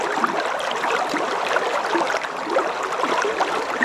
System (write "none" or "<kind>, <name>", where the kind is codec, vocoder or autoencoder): none